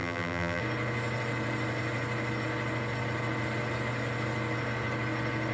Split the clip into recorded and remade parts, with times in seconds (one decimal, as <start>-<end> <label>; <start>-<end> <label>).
0.0-0.6 remade; 0.6-5.5 recorded